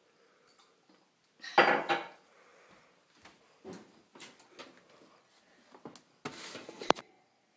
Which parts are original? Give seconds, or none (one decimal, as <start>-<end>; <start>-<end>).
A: 0.0-7.6